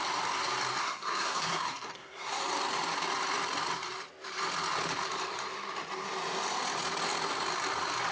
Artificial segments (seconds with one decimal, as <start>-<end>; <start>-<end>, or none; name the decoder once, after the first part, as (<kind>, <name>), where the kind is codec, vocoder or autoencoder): 0.8-2.4 (codec, SNAC)